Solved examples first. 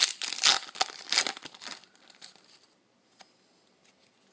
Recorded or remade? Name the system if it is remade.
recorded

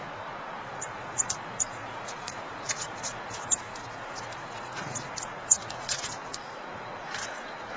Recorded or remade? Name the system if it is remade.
remade, vocoder, Vocos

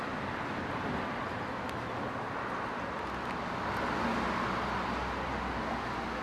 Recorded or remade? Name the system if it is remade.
recorded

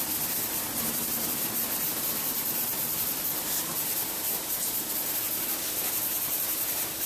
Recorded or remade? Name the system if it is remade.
remade, vocoder, BigVGAN v2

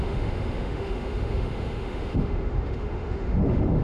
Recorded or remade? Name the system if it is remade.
remade, autoencoder, DAC-VAE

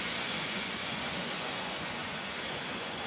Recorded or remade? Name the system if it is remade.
remade, vocoder, Vocos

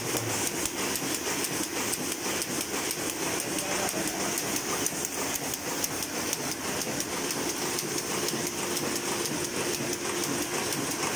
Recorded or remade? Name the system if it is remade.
recorded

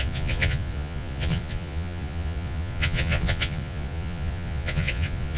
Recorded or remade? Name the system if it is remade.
remade, vocoder, Vocos